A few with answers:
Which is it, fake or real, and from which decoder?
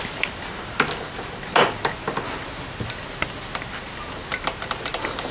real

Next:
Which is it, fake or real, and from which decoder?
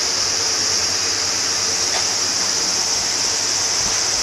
fake, vocoder, BigVGAN v2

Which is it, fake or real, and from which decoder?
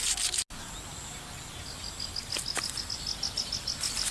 real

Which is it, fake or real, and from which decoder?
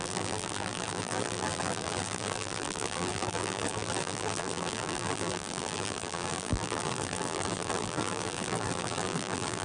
fake, vocoder, BigVGAN v2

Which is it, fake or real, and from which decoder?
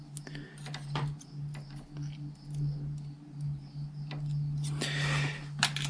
real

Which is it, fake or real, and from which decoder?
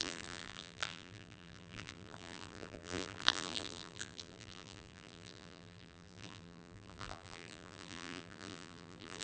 fake, vocoder, BigVGAN v2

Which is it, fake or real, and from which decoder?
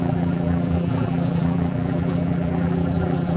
fake, vocoder, BigVGAN v2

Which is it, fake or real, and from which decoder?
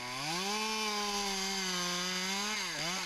real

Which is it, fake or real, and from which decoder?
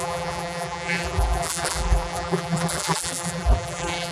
fake, vocoder, BigVGAN v2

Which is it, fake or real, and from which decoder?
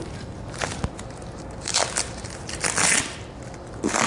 real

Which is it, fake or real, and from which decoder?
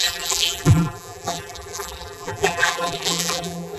fake, vocoder, BigVGAN v2